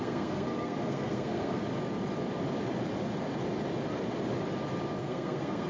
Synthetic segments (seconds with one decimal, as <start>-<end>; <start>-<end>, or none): 0.0-1.6; 5.0-5.7